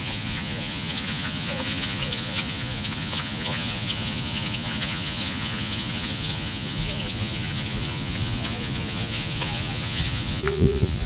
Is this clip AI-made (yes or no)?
yes